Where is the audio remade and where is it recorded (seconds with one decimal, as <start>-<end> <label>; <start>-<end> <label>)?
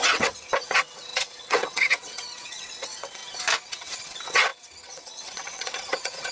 0.0-3.2 remade; 3.2-3.7 recorded; 3.7-6.3 remade